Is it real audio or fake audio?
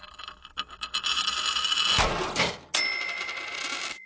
real